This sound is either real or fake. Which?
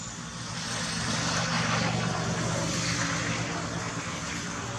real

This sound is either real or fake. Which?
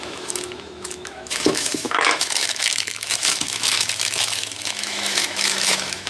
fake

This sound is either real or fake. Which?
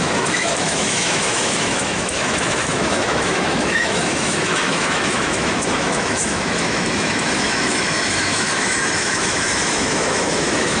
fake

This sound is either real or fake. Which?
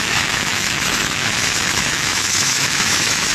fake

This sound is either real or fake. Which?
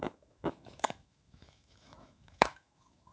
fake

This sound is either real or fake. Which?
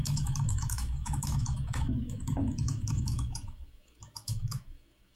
fake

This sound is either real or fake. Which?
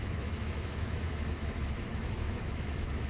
fake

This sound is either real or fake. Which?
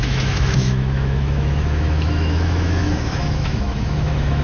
fake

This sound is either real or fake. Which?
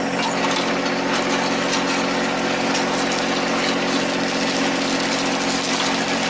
real